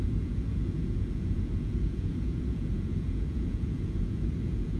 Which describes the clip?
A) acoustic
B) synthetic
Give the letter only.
B